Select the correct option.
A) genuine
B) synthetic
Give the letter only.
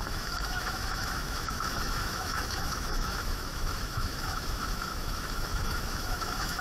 B